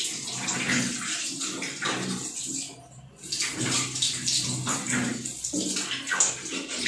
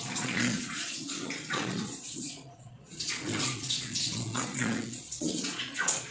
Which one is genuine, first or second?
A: first